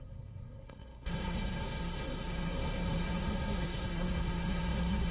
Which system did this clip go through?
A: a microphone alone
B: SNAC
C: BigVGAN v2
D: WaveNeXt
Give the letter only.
B